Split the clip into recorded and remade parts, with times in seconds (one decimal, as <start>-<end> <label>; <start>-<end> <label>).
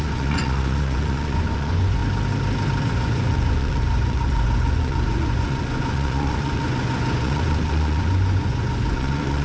0.0-2.0 remade; 2.0-2.8 recorded; 2.8-9.4 remade